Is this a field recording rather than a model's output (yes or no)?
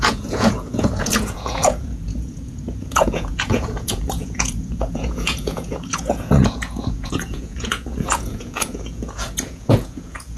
no